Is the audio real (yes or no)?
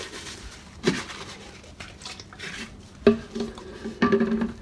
yes